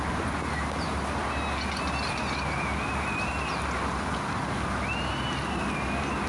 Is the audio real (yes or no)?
yes